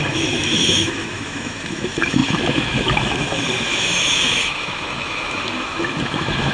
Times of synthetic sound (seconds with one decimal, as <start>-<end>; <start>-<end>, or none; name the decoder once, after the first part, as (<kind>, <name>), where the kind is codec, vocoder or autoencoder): 0.0-6.5 (autoencoder, DAC-VAE)